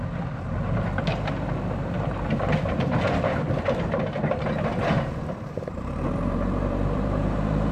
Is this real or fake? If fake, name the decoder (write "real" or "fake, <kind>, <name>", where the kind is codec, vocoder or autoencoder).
fake, vocoder, BigVGAN v2